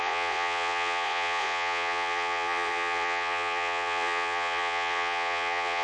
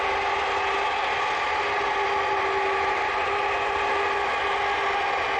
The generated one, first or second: first